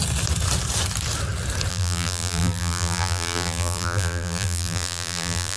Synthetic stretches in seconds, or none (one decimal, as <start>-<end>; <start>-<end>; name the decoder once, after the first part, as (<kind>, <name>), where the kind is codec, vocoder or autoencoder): 1.7-5.6 (vocoder, BigVGAN v2)